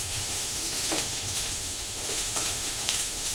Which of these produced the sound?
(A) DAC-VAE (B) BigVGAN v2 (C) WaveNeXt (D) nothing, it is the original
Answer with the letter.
A